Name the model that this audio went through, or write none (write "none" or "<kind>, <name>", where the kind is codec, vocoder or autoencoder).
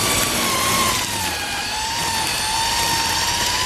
vocoder, BigVGAN v2